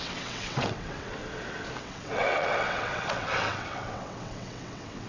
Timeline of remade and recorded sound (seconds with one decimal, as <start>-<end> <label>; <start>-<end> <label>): 0.0-1.2 remade; 1.2-1.8 recorded; 1.8-5.1 remade